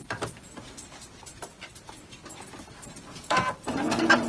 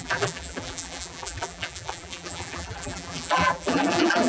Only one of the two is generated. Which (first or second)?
second